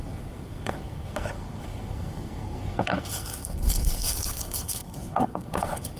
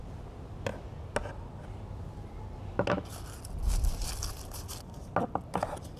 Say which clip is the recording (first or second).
second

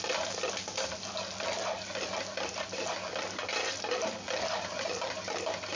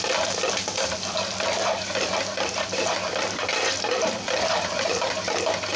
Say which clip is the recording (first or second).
first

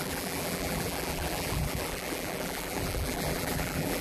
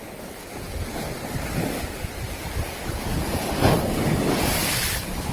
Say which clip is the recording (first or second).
second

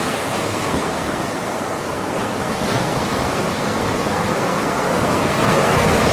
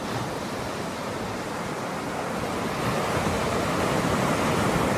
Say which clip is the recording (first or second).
second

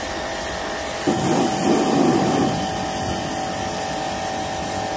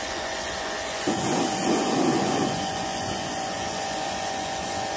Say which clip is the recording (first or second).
first